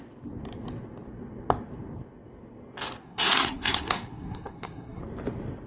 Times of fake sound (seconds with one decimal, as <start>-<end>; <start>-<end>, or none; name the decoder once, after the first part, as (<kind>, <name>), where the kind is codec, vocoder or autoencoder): 3.0-5.0 (codec, SNAC)